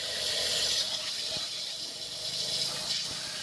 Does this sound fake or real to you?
real